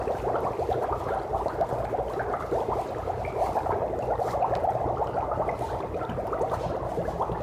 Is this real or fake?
real